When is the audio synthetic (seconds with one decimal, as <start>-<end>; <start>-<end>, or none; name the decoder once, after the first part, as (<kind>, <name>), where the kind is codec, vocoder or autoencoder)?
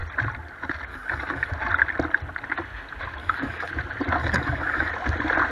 0.9-1.5 (codec, DAC); 3.2-3.7; 4.2-4.9